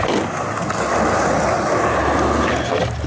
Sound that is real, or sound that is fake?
real